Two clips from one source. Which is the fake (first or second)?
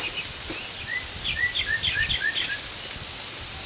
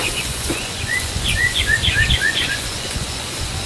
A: second